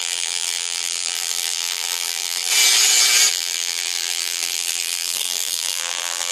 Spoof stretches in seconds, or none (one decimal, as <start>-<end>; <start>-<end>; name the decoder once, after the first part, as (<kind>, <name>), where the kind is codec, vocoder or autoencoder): 0.0-2.5 (vocoder, BigVGAN v2); 3.3-6.3